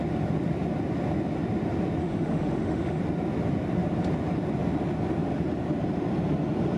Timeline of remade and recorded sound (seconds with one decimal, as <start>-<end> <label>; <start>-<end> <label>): 0.0-2.0 recorded; 2.0-3.0 remade; 3.0-6.8 recorded